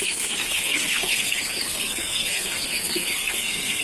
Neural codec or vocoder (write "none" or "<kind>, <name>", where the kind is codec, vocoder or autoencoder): codec, SNAC